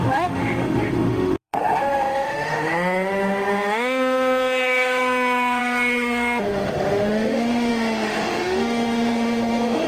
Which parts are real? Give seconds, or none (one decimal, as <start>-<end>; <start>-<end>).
none